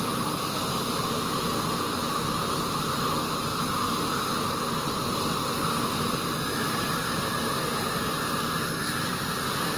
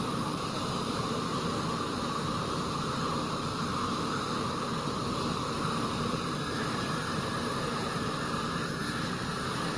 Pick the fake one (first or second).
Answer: second